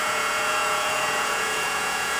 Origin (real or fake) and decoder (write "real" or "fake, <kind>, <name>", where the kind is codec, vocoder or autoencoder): fake, vocoder, Vocos